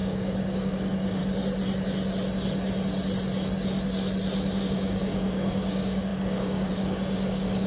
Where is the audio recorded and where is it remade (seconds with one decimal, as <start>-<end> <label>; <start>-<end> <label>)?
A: 0.0-1.2 remade; 1.2-4.6 recorded; 4.6-7.7 remade